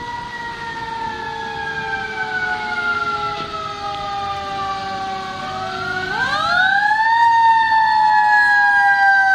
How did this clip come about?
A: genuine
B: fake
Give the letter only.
A